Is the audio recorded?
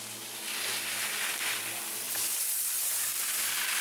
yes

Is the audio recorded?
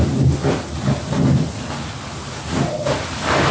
yes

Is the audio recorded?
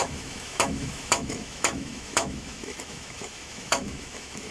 no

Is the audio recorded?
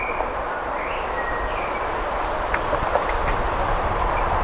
yes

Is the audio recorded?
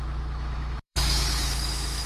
no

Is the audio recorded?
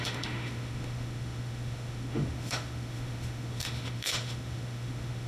no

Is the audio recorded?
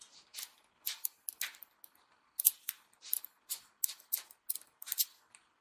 yes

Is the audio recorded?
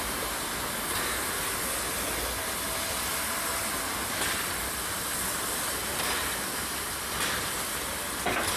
yes